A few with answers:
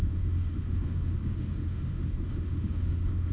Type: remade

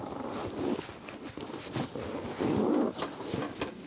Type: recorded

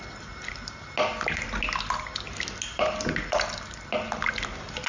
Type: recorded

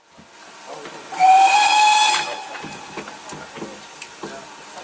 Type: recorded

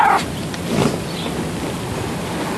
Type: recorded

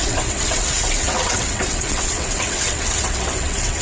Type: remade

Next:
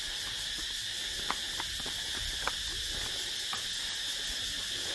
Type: recorded